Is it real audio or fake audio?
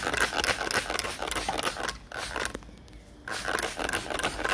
real